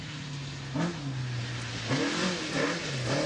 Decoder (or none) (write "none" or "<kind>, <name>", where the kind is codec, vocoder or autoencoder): none